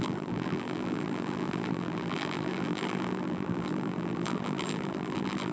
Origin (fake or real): fake